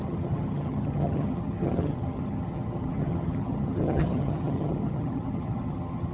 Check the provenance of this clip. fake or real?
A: fake